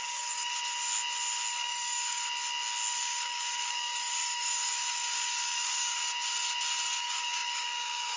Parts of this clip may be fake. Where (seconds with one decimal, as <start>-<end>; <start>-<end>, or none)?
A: 0.0-0.5; 1.5-2.2; 2.9-6.0; 7.0-8.2